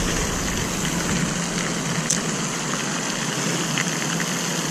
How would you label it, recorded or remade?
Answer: recorded